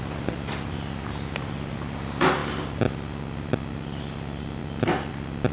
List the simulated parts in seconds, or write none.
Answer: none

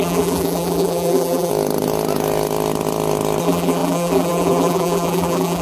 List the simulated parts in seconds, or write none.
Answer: 0.0-1.5; 3.4-5.6

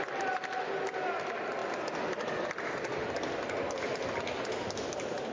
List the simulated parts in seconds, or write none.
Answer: none

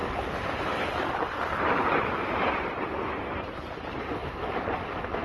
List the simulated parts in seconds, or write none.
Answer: 0.0-1.1; 2.2-2.8; 4.2-5.2

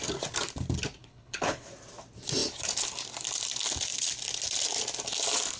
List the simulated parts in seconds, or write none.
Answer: 1.0-1.7